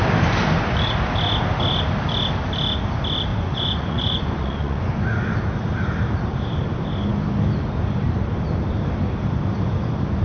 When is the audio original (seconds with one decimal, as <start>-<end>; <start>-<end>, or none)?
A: 0.0-3.3; 5.0-10.2